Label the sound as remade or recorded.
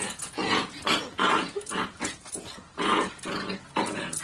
remade